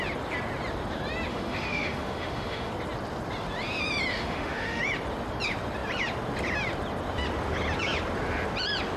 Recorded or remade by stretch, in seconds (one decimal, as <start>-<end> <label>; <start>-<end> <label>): 0.0-1.3 recorded; 1.3-2.7 remade; 2.7-4.1 recorded; 4.1-4.8 remade; 4.8-9.0 recorded